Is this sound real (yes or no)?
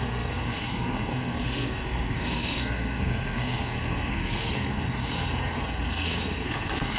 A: no